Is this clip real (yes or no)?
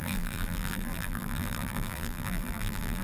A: no